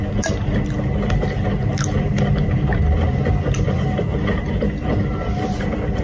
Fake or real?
real